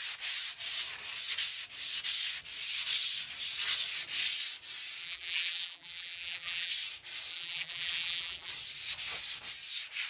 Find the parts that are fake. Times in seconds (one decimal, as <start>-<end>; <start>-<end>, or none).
5.0-6.7; 7.3-8.5